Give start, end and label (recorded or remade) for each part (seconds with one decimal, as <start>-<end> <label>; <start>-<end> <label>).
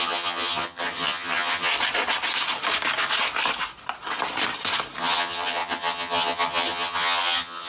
0.0-1.7 remade; 1.7-5.0 recorded; 5.0-7.7 remade